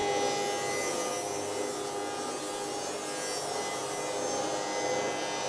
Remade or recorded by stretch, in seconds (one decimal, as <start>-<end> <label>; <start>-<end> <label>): 0.0-5.5 recorded

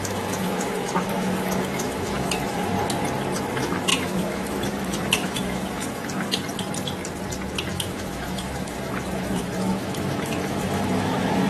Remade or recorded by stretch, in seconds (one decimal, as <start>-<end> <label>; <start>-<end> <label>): 0.0-2.7 remade; 2.7-3.5 recorded; 3.5-6.3 remade; 6.3-7.7 recorded; 7.7-11.5 remade

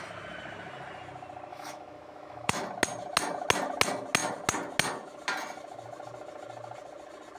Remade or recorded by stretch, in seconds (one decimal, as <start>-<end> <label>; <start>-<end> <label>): 0.0-1.5 recorded; 1.5-2.6 remade; 2.6-7.4 recorded

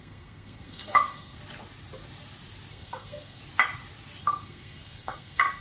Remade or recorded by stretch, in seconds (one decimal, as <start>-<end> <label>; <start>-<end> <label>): 0.0-1.4 remade; 1.4-2.7 recorded; 2.7-3.4 remade; 3.4-4.2 recorded; 4.2-5.6 remade

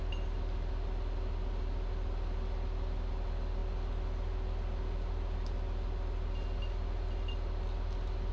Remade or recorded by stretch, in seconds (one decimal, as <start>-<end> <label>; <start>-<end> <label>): 0.0-8.3 recorded

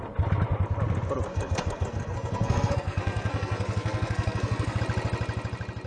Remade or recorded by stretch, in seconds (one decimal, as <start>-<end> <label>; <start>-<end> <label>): 0.0-1.3 recorded; 1.3-4.8 remade; 4.8-5.9 recorded